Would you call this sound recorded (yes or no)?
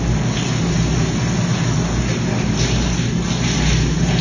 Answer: yes